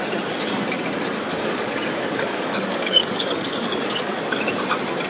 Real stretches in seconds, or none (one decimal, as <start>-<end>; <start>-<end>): 0.0-1.3; 4.1-5.1